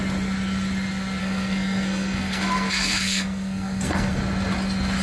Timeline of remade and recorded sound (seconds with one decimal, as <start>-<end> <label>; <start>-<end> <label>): 0.0-1.2 recorded; 1.2-4.2 remade; 4.2-5.0 recorded